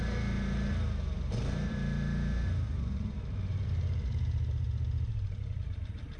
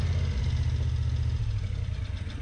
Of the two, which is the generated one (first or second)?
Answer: first